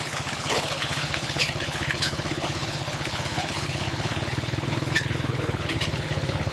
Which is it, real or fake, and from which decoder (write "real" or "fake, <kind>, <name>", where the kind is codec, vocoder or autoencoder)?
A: fake, codec, HILCodec